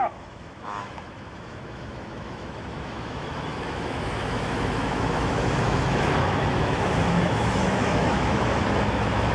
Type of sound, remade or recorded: remade